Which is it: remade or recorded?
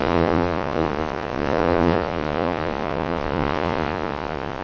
remade